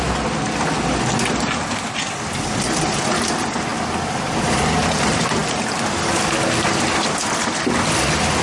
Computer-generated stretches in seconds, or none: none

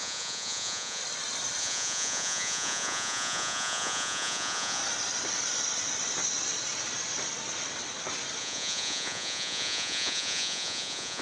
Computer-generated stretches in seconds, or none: 0.0-1.0; 1.6-4.8; 8.4-11.2

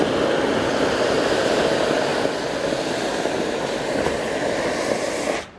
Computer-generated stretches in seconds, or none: none

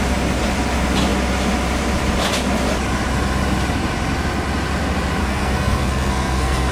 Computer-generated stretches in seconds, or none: 5.2-6.7

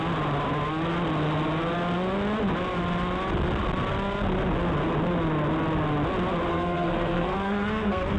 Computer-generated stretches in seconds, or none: 6.5-8.2

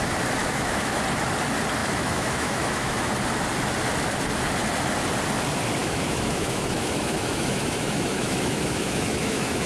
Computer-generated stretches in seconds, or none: 0.4-1.0; 1.8-3.1; 5.8-9.7